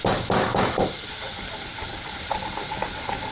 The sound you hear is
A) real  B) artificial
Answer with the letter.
A